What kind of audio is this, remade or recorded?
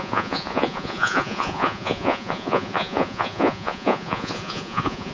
remade